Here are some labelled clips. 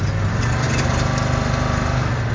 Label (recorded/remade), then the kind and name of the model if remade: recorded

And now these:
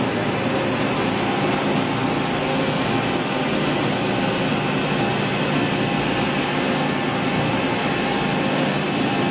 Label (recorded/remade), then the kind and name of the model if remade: recorded